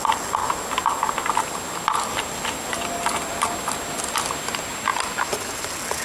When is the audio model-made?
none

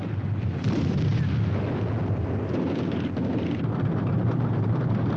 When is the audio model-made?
0.0-1.1 (vocoder, BigVGAN v2); 4.2-5.2

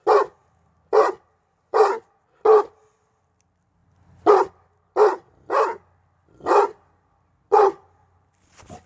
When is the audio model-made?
3.8-4.5 (vocoder, BigVGAN v2)

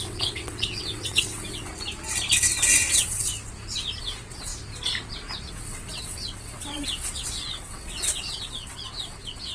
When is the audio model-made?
0.0-1.7 (vocoder, WaveNeXt); 2.8-3.3; 4.0-4.5; 5.5-9.5

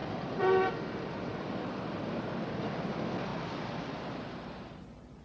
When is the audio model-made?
0.0-0.7 (vocoder, BigVGAN v2); 1.3-2.6; 3.3-4.0

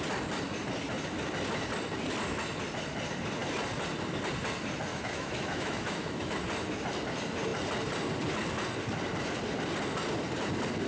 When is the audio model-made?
4.9-6.4 (autoencoder, DAC-VAE)

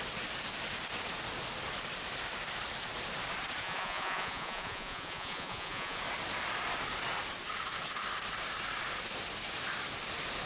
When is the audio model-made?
3.6-6.0 (vocoder, Vocos)